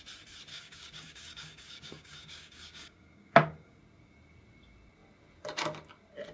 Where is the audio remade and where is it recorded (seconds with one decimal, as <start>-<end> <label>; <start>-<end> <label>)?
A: 0.0-0.5 recorded; 0.5-3.8 remade; 3.8-6.3 recorded

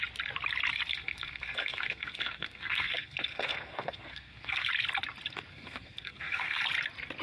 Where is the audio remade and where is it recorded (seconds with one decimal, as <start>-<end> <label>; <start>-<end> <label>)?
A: 0.0-0.9 recorded; 0.9-4.7 remade; 4.7-5.5 recorded; 5.5-6.6 remade; 6.6-7.2 recorded

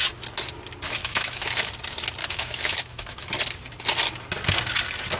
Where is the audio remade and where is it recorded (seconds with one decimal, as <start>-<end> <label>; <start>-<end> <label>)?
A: 0.0-1.0 recorded; 1.0-1.7 remade; 1.7-2.2 recorded; 2.2-3.2 remade; 3.2-5.2 recorded

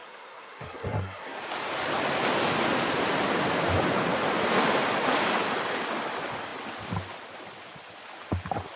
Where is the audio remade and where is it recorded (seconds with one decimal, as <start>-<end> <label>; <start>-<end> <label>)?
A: 0.0-1.4 remade; 1.4-8.8 recorded

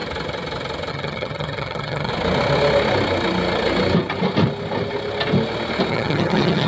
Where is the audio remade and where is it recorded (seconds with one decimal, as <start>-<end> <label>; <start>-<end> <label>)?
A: 0.0-0.9 recorded; 0.9-2.1 remade; 2.1-5.9 recorded; 5.9-6.7 remade

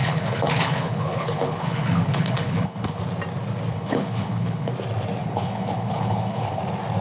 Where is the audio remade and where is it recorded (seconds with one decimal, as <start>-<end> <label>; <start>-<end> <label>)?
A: 0.0-3.0 remade; 3.0-3.7 recorded; 3.7-4.7 remade; 4.7-5.2 recorded; 5.2-6.6 remade; 6.6-7.0 recorded

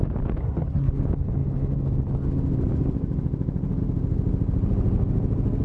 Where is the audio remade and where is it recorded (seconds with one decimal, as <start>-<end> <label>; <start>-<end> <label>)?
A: 0.0-0.4 recorded; 0.4-0.9 remade; 0.9-5.6 recorded